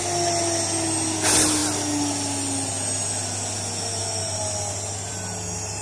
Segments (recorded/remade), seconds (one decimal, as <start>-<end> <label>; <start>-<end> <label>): 0.0-5.8 recorded